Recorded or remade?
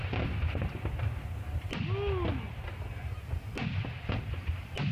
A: recorded